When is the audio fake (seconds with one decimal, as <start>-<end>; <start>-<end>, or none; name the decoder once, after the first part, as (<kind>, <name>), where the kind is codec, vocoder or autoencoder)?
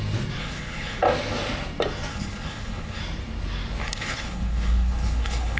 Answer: 0.4-1.0 (codec, HILCodec); 2.1-3.0; 3.8-5.6